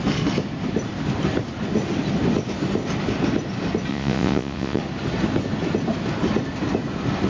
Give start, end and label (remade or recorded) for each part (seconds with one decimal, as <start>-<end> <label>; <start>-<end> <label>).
0.0-3.9 recorded; 3.9-4.8 remade; 4.8-7.3 recorded